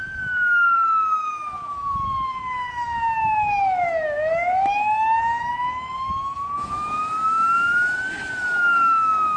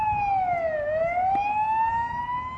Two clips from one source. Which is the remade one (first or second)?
first